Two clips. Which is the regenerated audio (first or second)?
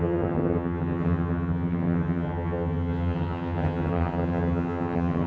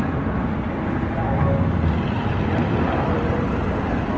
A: first